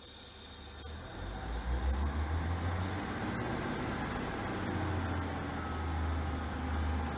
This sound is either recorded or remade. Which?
recorded